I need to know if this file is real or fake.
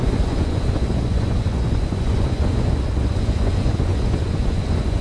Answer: fake